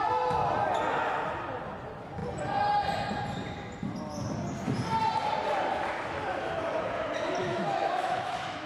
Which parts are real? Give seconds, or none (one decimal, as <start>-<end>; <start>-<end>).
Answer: 0.0-7.4